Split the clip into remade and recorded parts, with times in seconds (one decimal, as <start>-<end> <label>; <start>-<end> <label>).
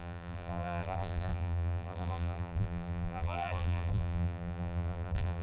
0.0-5.4 remade